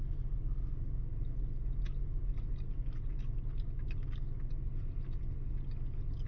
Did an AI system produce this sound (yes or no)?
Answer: no